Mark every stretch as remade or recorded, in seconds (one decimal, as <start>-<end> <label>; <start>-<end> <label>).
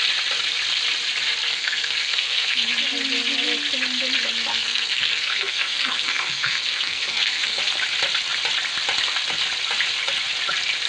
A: 0.0-1.5 recorded; 1.5-2.7 remade; 2.7-4.5 recorded; 4.5-7.6 remade; 7.6-10.9 recorded